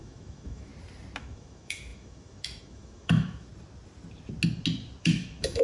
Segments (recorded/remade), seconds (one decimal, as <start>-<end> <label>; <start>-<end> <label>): 0.0-0.7 remade; 0.7-1.2 recorded; 1.2-3.5 remade; 3.5-5.0 recorded; 5.0-5.6 remade